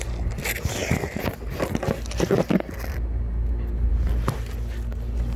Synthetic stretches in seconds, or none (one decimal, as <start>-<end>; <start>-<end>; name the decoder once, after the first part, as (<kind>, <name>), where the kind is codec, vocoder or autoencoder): none